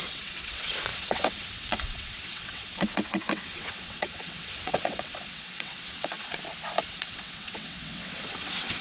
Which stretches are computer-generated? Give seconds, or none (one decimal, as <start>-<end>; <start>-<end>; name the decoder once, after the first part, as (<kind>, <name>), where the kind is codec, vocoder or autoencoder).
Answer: 0.0-6.3 (vocoder, WaveNeXt); 6.9-8.8